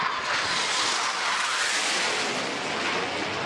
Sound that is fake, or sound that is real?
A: real